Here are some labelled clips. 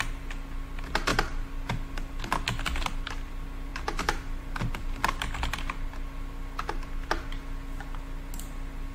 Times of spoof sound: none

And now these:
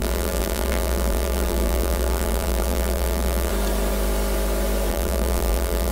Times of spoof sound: 0.0-3.5; 4.9-5.9

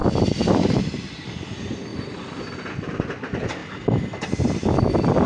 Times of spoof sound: 1.9-2.4

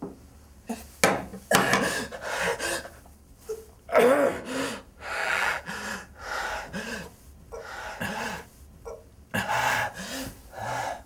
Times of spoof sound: 5.2-5.7

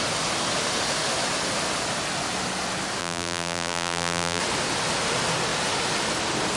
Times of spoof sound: 3.0-4.4